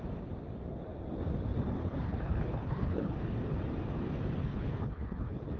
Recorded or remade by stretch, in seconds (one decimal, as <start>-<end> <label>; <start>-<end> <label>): 0.0-1.8 recorded; 1.8-3.2 remade; 3.2-4.4 recorded; 4.4-5.6 remade